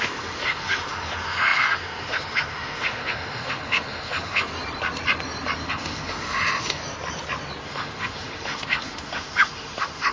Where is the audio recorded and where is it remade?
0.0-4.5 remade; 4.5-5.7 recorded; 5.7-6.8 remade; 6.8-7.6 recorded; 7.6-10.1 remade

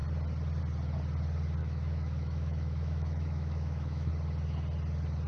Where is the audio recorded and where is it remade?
0.0-1.6 recorded; 1.6-4.1 remade; 4.1-5.3 recorded

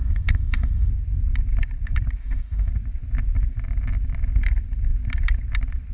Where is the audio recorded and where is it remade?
0.0-0.9 remade; 0.9-2.2 recorded; 2.2-2.7 remade; 2.7-5.9 recorded

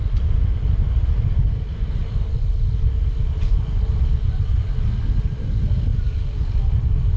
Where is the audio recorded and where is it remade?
0.0-7.2 recorded

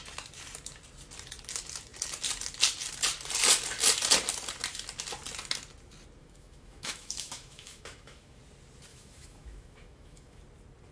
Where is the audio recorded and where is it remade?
0.0-6.2 recorded; 6.2-8.4 remade; 8.4-8.9 recorded; 8.9-10.4 remade; 10.4-10.9 recorded

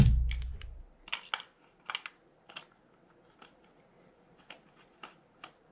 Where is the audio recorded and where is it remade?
0.0-5.7 recorded

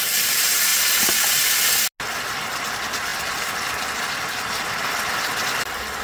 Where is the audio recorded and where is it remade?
0.0-6.0 recorded

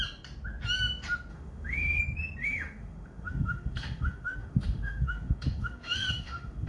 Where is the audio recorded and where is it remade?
0.0-1.3 recorded; 1.3-2.0 remade; 2.0-2.4 recorded; 2.4-6.7 remade